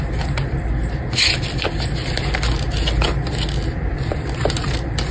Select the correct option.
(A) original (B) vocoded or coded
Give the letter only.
A